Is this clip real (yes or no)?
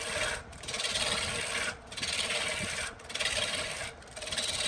yes